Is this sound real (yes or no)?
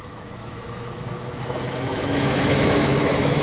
no